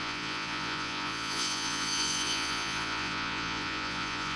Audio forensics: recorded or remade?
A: remade